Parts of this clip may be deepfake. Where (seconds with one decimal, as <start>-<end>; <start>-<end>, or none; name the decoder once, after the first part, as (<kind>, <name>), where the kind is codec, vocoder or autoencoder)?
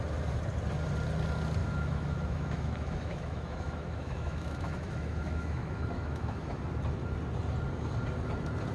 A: 1.6-6.6 (autoencoder, DAC-VAE)